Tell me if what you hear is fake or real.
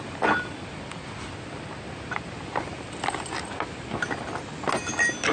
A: real